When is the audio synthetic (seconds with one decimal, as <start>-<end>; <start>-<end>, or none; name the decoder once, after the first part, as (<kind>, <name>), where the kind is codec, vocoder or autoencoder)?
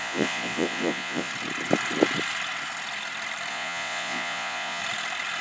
0.0-1.3 (vocoder, Vocos); 3.5-4.8